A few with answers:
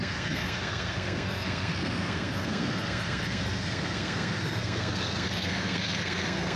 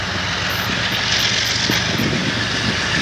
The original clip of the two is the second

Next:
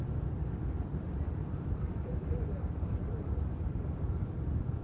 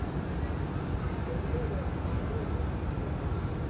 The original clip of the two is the second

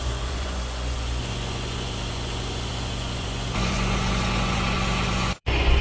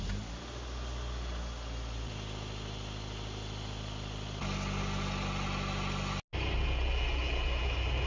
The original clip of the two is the second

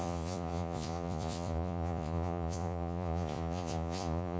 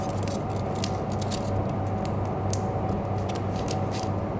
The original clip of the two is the second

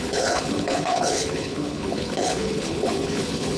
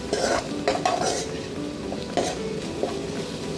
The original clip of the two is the second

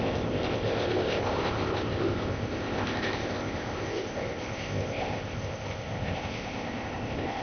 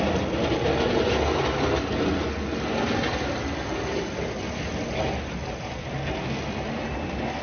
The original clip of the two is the second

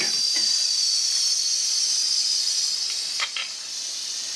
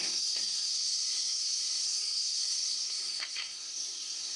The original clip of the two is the first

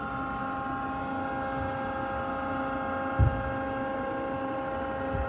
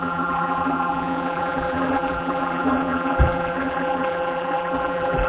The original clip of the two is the first